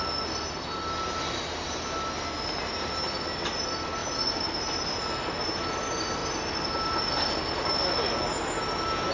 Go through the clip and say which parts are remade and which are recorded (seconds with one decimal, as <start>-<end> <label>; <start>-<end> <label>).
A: 0.0-4.0 recorded; 4.0-5.2 remade; 5.2-9.1 recorded